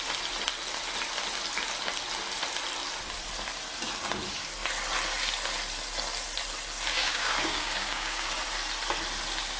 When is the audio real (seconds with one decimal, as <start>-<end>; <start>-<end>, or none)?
0.0-6.9; 8.3-9.6

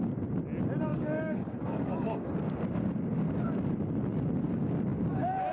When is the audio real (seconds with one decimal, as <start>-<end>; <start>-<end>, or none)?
0.0-0.9; 2.3-5.5